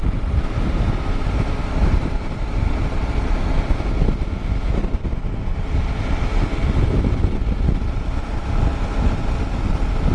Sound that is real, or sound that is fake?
real